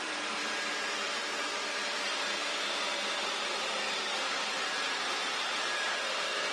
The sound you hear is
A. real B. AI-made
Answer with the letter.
B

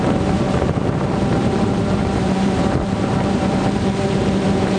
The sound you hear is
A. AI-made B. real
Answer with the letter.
A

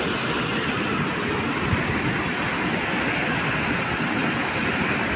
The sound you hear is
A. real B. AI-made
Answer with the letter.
A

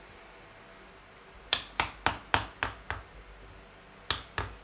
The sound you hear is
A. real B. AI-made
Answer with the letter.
A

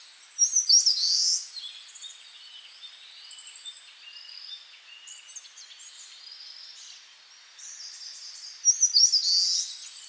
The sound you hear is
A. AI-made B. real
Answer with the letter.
B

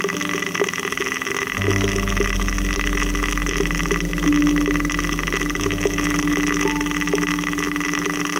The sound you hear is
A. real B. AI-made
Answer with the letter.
A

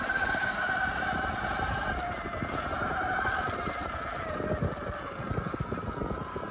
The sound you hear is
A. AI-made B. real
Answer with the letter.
B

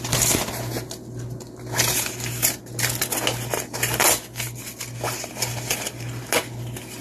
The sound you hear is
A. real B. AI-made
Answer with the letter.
A